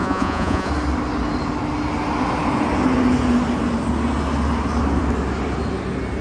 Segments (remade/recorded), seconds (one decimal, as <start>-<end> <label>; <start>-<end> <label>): 0.0-0.7 remade; 0.7-6.2 recorded